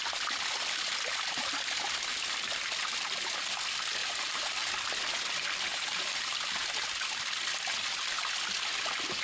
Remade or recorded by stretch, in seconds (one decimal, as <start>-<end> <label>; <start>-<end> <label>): 0.0-2.1 recorded; 2.1-2.6 remade; 2.6-4.0 recorded; 4.0-4.6 remade; 4.6-5.7 recorded; 5.7-6.7 remade; 6.7-9.2 recorded